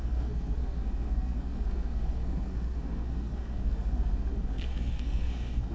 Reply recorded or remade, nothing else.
remade